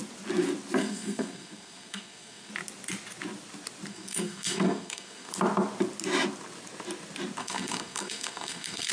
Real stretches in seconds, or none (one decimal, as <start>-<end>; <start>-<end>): 0.0-0.8; 2.5-3.9; 5.3-7.4